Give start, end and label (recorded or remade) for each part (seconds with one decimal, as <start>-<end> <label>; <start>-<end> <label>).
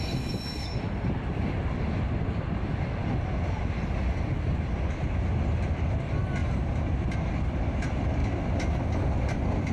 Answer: 0.0-9.7 recorded